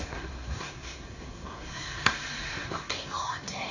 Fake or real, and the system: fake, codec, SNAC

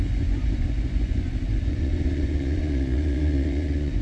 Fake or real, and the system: fake, vocoder, Vocos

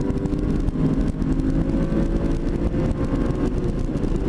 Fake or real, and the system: real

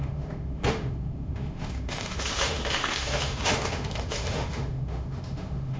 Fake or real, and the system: fake, autoencoder, DAC-VAE